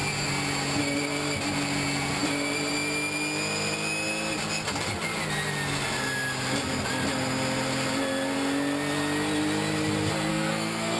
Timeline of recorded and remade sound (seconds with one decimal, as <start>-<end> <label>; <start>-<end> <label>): 0.0-10.3 recorded; 10.3-11.0 remade